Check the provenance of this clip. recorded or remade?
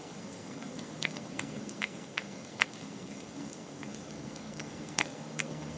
remade